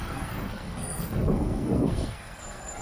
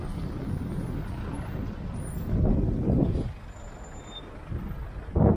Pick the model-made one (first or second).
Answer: first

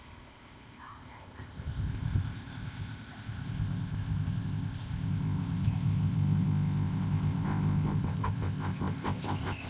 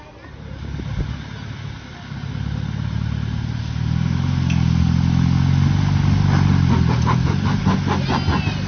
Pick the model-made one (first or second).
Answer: first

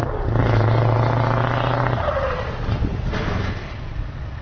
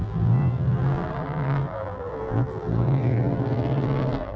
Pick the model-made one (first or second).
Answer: second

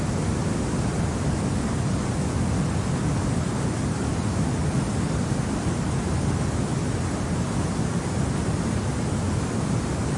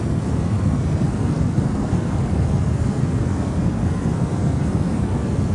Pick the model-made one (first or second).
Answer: second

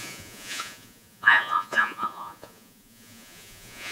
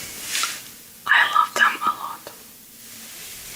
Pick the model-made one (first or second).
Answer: first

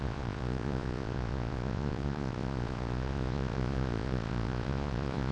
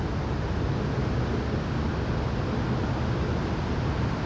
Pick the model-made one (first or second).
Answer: first